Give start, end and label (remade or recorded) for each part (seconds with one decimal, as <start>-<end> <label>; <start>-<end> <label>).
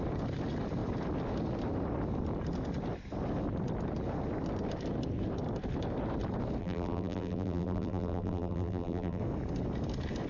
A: 0.0-6.6 recorded; 6.6-9.2 remade; 9.2-10.3 recorded